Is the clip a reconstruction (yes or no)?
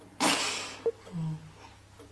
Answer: no